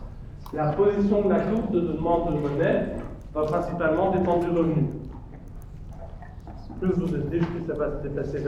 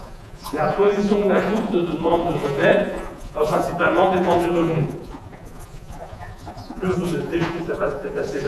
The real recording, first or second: first